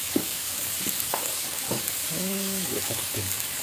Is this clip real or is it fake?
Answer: fake